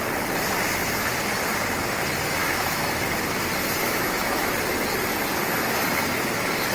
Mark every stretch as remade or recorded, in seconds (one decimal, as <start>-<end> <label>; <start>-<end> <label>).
0.0-2.4 recorded; 2.4-3.0 remade; 3.0-3.8 recorded; 3.8-4.5 remade; 4.5-6.7 recorded